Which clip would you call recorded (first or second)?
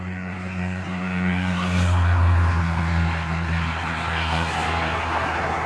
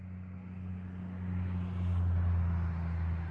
second